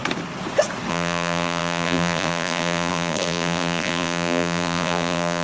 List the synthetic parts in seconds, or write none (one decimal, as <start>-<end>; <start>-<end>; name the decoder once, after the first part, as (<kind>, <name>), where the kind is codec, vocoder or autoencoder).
0.9-5.4 (vocoder, BigVGAN v2)